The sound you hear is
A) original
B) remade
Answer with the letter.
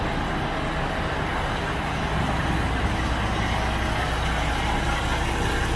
A